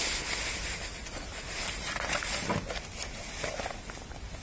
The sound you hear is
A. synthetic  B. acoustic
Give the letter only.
B